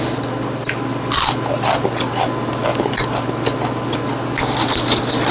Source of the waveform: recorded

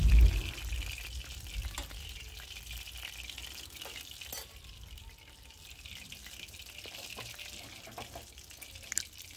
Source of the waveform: recorded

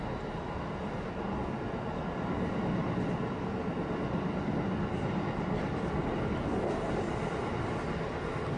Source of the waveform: recorded